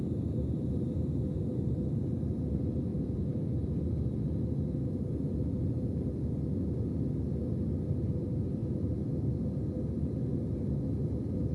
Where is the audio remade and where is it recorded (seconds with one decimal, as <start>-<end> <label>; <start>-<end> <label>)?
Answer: 0.0-2.9 recorded; 2.9-3.8 remade; 3.8-8.6 recorded; 8.6-9.2 remade; 9.2-11.5 recorded